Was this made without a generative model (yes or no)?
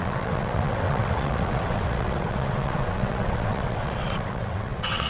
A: no